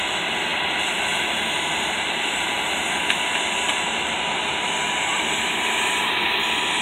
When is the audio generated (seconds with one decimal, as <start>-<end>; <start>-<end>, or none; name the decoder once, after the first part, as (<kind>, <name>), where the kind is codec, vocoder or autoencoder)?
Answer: 0.5-4.5 (vocoder, BigVGAN v2)